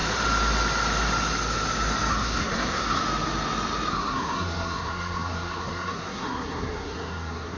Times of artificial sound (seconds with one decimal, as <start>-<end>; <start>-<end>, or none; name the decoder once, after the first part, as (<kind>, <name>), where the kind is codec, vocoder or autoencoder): 2.1-3.0 (codec, SNAC); 3.9-7.6